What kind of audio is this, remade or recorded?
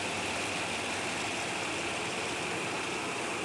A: recorded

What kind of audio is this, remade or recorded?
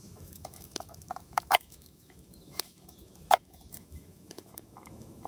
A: remade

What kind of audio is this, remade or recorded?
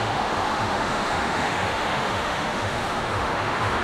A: remade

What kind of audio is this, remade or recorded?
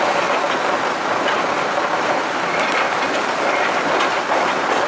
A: recorded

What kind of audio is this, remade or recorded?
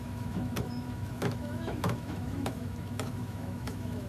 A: remade